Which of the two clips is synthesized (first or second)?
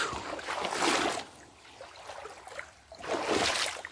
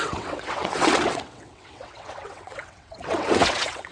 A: second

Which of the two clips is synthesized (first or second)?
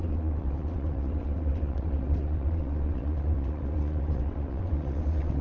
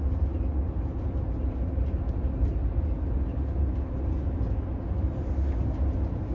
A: first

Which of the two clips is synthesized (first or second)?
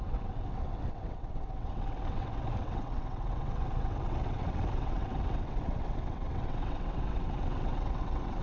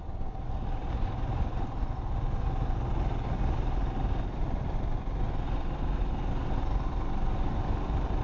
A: first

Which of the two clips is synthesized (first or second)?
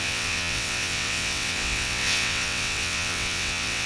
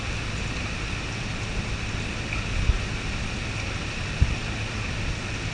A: first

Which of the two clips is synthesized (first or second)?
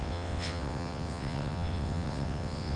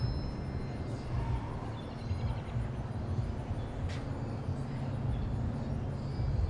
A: first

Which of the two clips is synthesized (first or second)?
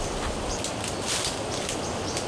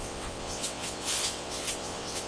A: second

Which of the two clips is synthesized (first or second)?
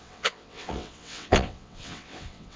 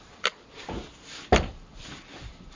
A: first